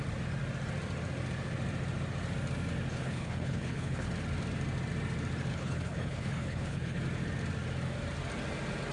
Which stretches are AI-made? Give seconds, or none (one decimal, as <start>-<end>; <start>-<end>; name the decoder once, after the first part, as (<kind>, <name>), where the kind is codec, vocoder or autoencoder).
2.9-4.1 (codec, HILCodec); 5.5-7.0